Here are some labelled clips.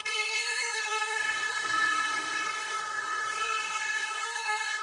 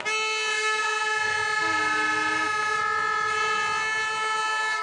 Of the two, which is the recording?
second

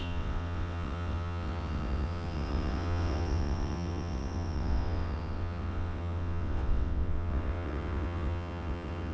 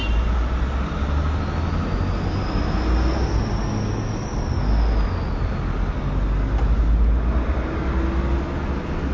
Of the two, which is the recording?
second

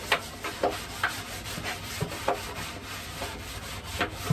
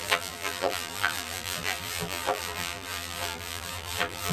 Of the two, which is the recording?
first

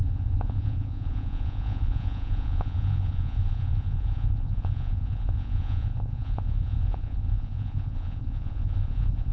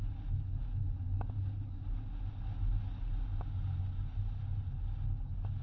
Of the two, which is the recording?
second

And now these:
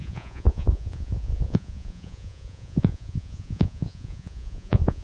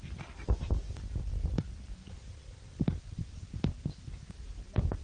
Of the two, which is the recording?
second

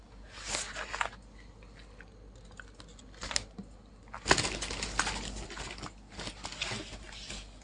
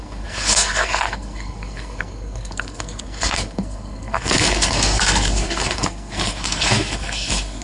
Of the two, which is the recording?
first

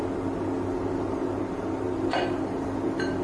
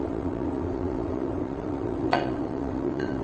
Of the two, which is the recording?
first